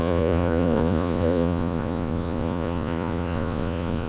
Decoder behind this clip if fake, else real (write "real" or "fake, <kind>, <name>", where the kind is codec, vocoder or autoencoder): fake, vocoder, Vocos